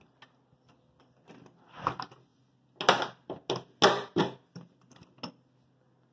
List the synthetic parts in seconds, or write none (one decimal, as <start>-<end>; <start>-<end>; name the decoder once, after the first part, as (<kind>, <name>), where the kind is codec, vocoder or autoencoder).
none